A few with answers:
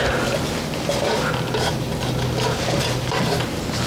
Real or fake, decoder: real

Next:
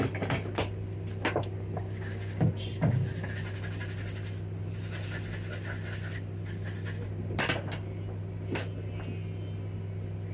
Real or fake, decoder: real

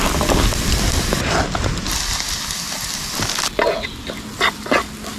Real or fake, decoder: real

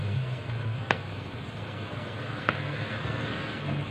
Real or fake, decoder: fake, codec, SNAC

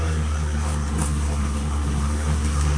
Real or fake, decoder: fake, codec, SNAC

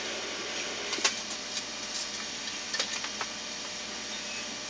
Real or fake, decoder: real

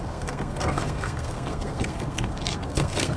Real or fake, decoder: fake, codec, SNAC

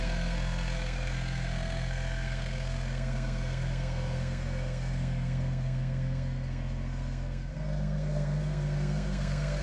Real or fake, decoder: fake, codec, SNAC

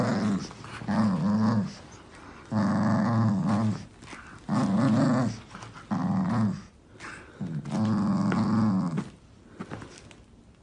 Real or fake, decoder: real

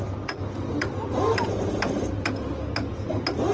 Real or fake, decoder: real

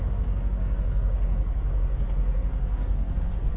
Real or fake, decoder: fake, codec, SNAC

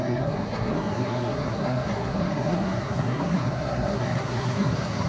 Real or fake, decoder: fake, codec, SNAC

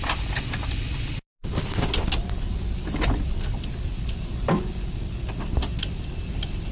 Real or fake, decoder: real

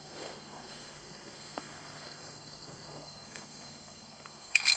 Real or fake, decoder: fake, codec, SNAC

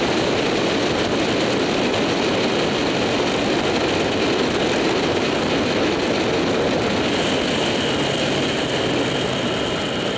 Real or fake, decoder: real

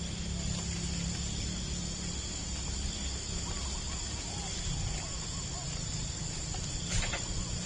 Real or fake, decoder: real